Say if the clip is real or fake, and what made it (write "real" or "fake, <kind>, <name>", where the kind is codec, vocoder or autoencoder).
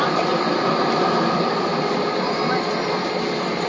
real